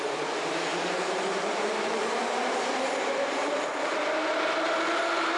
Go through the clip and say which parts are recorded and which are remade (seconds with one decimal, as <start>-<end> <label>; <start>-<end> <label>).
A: 0.0-0.7 recorded; 0.7-3.9 remade; 3.9-5.4 recorded